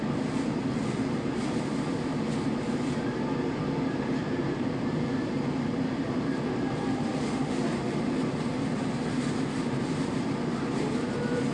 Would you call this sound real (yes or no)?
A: no